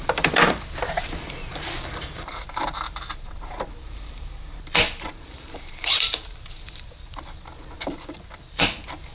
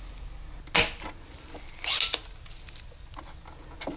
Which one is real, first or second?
second